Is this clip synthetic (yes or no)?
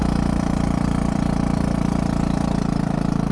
yes